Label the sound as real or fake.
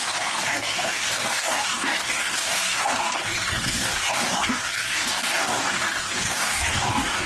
fake